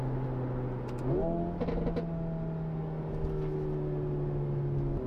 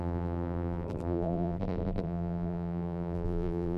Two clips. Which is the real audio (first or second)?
first